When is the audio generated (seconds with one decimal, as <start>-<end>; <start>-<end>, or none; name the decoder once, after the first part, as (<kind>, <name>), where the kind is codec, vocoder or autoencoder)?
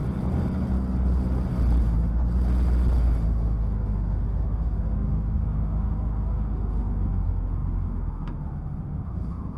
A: 1.8-2.2 (autoencoder, DAC-VAE); 3.0-9.6